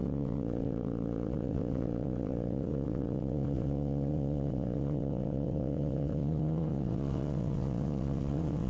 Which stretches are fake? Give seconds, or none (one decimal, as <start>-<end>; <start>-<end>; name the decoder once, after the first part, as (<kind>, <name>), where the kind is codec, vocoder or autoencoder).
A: 0.0-8.7 (vocoder, WaveNeXt)